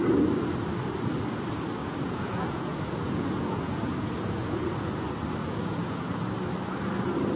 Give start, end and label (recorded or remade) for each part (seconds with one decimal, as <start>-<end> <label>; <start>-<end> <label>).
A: 0.0-1.8 recorded; 1.8-4.9 remade; 4.9-5.4 recorded; 5.4-6.3 remade; 6.3-7.4 recorded